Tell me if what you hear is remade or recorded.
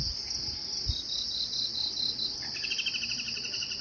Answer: recorded